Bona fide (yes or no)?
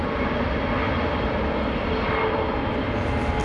yes